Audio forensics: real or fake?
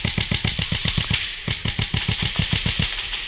real